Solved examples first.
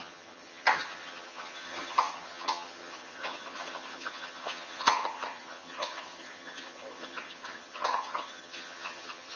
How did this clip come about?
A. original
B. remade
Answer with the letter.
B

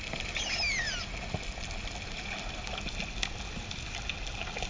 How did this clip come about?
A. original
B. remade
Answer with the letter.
A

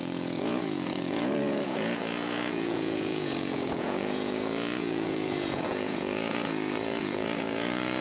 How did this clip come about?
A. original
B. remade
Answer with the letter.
B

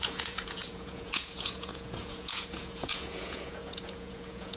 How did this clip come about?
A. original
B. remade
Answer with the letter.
B